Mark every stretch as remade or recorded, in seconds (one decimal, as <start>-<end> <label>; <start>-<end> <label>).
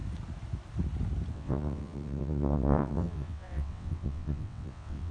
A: 0.0-1.3 recorded; 1.3-5.1 remade